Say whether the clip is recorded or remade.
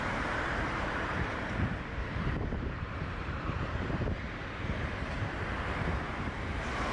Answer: remade